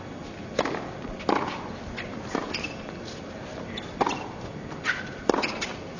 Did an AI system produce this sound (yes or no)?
no